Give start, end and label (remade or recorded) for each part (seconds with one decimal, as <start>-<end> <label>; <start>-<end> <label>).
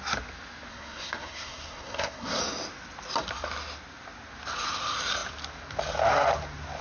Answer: 0.0-0.7 recorded; 0.7-2.4 remade; 2.4-6.8 recorded